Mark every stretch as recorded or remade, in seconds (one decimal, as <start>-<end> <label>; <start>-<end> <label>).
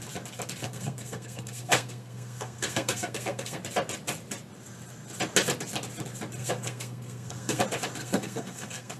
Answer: 0.0-0.6 recorded; 0.6-3.6 remade; 3.6-6.4 recorded; 6.4-7.6 remade; 7.6-8.0 recorded; 8.0-9.0 remade